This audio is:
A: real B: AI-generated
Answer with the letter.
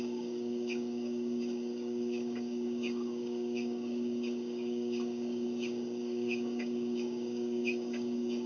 B